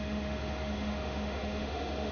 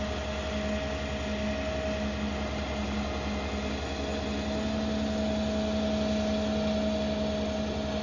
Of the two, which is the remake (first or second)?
first